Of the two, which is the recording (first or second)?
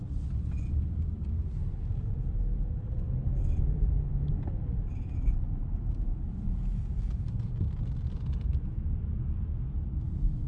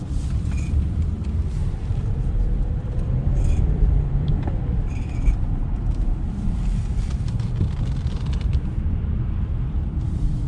first